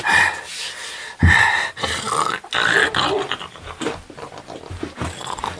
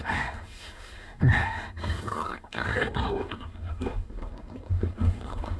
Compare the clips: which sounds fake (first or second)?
second